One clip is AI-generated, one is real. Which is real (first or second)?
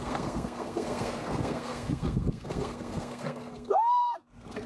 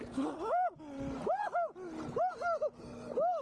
second